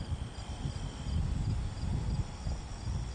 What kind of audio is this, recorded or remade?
recorded